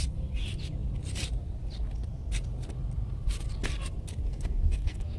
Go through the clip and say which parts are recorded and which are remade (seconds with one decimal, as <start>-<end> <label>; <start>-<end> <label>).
0.0-4.3 recorded; 4.3-5.2 remade